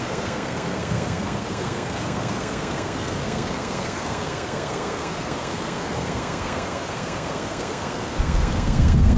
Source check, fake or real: fake